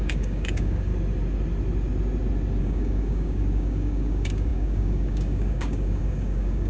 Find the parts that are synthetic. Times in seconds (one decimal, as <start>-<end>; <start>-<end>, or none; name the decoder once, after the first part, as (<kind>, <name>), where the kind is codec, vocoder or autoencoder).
0.0-0.9 (codec, DAC); 2.6-6.7